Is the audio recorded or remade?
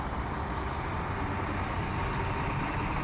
recorded